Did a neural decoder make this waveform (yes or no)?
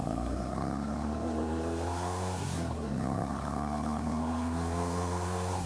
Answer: yes